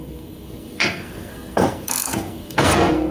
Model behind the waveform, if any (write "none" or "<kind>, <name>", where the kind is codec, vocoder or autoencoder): codec, SNAC